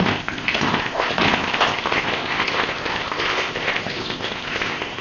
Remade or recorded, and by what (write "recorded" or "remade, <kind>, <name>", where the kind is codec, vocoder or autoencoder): remade, codec, ZipCodec